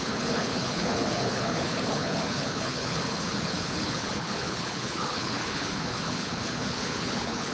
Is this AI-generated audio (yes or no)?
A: yes